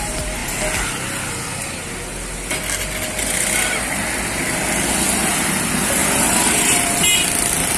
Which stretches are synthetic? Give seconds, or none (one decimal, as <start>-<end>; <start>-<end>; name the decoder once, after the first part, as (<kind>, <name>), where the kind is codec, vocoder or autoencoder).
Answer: 6.0-7.1 (vocoder, BigVGAN v2)